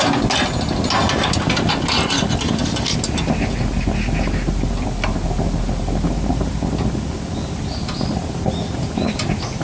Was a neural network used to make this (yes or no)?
no